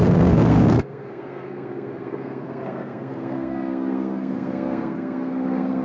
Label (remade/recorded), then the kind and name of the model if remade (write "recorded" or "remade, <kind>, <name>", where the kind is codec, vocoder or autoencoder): remade, codec, SNAC